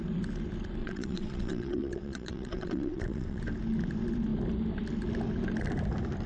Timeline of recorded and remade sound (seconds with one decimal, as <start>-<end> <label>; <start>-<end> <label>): 0.0-0.8 recorded; 0.8-3.4 remade; 3.4-6.3 recorded